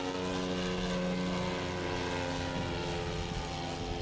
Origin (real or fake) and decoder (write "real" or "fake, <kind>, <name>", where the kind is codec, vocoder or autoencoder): real